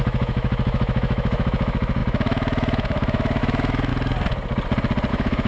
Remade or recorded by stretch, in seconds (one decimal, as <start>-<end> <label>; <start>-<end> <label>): 0.0-3.9 remade; 3.9-5.1 recorded; 5.1-5.5 remade